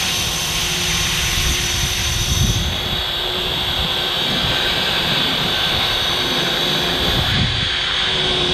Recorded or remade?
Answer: remade